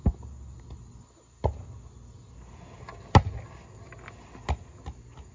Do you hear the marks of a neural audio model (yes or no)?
no